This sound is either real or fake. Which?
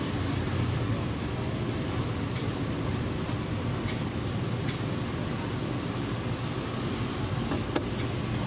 real